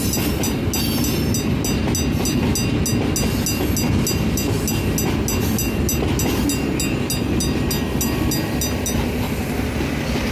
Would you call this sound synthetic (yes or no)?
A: no